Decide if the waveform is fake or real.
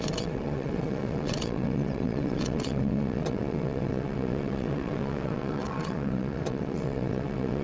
fake